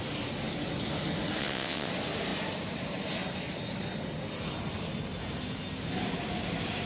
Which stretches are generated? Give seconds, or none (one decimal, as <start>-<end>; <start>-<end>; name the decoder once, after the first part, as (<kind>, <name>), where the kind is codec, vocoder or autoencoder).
1.4-1.9 (vocoder, WaveNeXt)